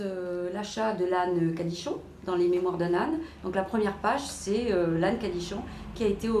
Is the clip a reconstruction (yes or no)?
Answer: no